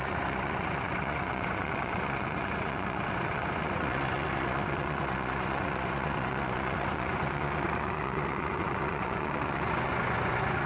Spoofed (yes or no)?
yes